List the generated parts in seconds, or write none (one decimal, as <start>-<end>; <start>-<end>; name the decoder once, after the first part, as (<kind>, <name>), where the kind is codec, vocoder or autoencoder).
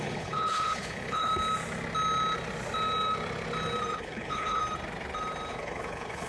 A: 0.0-1.3 (codec, HILCodec); 4.0-4.6; 5.5-6.3